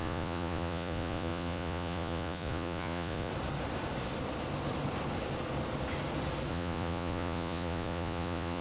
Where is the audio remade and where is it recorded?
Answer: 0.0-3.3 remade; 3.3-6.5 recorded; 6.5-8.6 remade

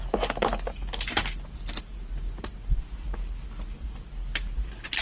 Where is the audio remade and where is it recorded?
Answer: 0.0-5.0 recorded